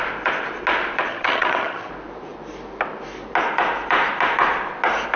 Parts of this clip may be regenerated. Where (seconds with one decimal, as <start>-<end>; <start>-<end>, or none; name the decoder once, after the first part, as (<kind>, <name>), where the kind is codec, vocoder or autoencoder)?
1.1-1.9 (vocoder, HiFi-GAN)